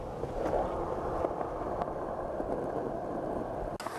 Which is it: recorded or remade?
recorded